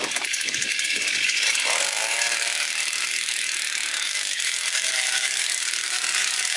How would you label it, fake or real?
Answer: fake